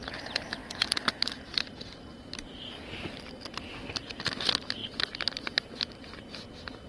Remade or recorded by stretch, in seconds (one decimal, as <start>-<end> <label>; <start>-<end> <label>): 0.0-0.6 recorded; 0.6-3.4 remade; 3.4-4.8 recorded; 4.8-6.9 remade